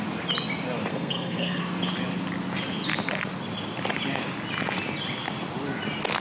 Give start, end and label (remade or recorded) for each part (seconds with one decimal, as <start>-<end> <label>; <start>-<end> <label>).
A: 0.0-0.9 recorded; 0.9-1.6 remade; 1.6-6.2 recorded